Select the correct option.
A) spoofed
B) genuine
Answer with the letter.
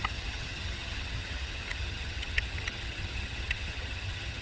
A